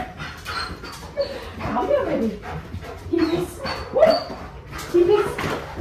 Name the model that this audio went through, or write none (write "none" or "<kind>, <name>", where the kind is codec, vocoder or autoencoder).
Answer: none